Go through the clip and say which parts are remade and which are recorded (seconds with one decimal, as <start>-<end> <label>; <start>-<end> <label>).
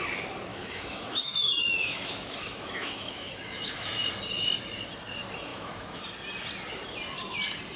0.0-0.5 recorded; 0.5-4.1 remade; 4.1-5.5 recorded; 5.5-6.0 remade; 6.0-7.8 recorded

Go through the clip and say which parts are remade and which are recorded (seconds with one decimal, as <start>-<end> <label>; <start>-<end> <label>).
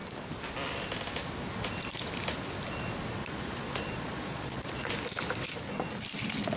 0.0-3.2 recorded; 3.2-4.9 remade; 4.9-6.6 recorded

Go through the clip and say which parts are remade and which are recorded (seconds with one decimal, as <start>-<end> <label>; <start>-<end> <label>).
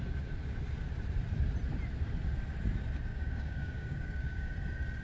0.0-3.1 recorded; 3.1-4.5 remade; 4.5-5.0 recorded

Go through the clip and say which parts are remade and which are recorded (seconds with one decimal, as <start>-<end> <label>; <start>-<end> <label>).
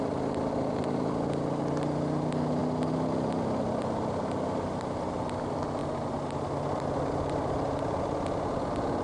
0.0-9.0 recorded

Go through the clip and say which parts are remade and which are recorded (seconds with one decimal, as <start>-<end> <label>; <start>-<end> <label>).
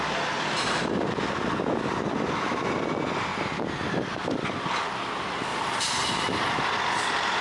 0.0-5.5 recorded; 5.5-6.4 remade; 6.4-7.4 recorded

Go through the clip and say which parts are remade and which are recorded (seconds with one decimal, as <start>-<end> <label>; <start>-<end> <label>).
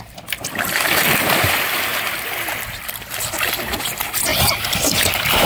0.0-1.9 remade; 1.9-3.8 recorded; 3.8-5.5 remade